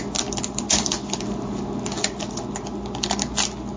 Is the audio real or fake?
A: real